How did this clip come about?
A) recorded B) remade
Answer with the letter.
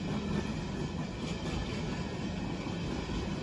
A